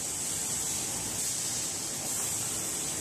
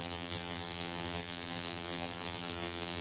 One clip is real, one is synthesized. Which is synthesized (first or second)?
second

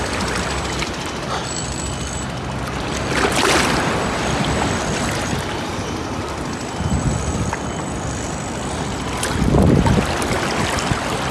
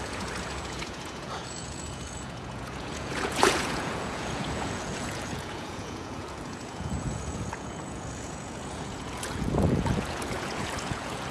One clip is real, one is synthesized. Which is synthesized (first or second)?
second